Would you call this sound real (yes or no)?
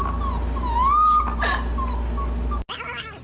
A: yes